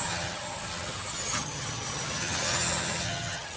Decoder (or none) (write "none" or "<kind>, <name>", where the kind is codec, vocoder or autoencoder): vocoder, HiFi-GAN